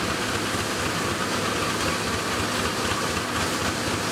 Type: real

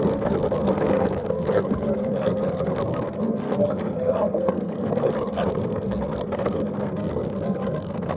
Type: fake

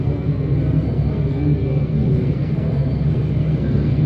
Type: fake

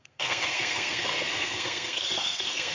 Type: fake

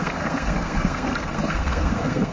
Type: fake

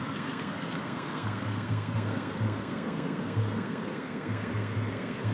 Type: fake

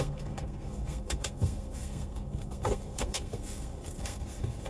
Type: fake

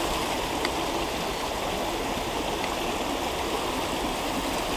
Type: real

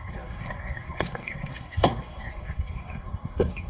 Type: fake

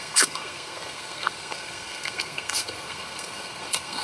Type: fake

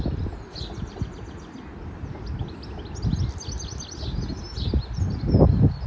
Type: real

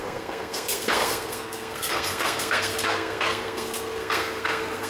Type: fake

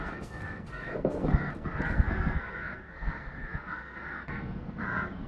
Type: fake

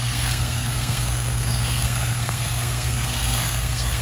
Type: fake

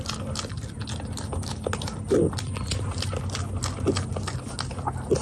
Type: real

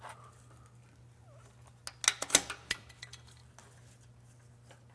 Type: real